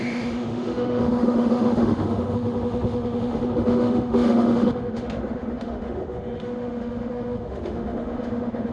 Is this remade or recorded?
remade